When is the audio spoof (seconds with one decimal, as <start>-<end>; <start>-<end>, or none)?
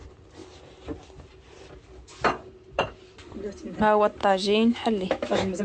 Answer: 4.2-5.6